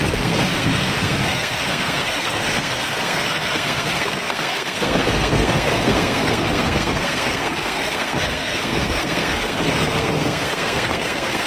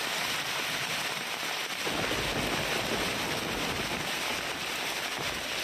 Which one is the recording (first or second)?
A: second